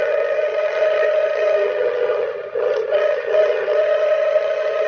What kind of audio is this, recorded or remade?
remade